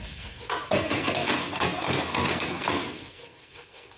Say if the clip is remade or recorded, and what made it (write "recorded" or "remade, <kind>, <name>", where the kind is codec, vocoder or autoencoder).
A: remade, codec, SNAC